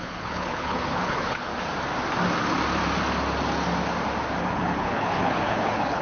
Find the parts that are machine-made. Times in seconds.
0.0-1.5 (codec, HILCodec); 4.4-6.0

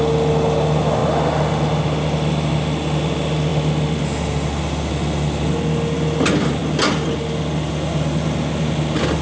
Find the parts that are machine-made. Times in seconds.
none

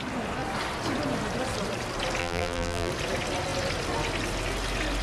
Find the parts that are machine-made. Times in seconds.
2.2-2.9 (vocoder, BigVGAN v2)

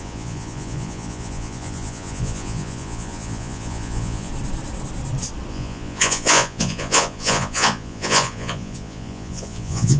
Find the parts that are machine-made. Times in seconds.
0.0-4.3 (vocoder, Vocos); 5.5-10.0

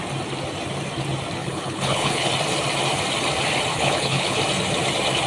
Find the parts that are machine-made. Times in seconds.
1.4-2.3 (codec, HILCodec); 3.7-4.4

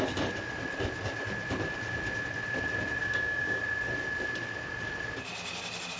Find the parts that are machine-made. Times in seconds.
3.0-3.6 (codec, DAC)

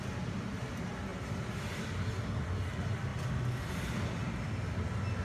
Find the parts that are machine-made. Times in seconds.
1.1-1.8 (vocoder, BigVGAN v2); 3.1-3.7

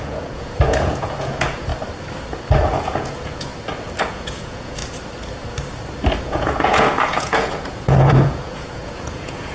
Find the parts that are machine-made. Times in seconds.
0.0-1.7 (vocoder, Vocos); 2.8-3.5; 4.1-4.8; 6.2-9.5